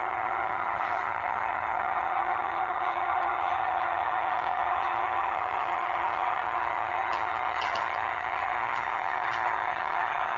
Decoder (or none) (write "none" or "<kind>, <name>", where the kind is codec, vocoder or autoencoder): vocoder, HiFi-GAN